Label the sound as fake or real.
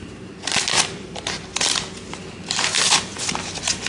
real